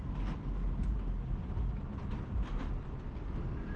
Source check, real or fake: real